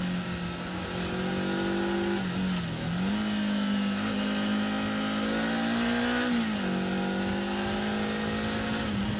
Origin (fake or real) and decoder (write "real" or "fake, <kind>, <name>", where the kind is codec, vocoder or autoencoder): real